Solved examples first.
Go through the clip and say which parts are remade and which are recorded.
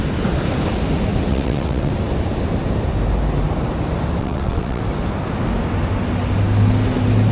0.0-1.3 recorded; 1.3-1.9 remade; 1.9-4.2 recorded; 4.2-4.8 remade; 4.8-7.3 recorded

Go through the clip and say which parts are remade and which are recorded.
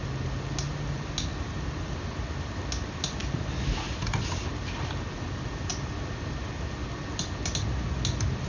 0.0-8.5 recorded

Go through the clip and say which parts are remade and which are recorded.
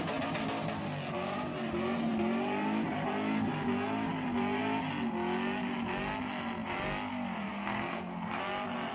0.0-7.5 recorded; 7.5-8.4 remade; 8.4-8.9 recorded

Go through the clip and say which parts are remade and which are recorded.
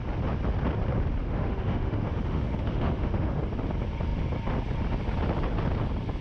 0.0-1.2 recorded; 1.2-3.4 remade; 3.4-6.2 recorded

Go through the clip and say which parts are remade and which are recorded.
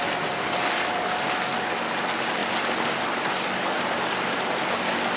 0.0-5.2 recorded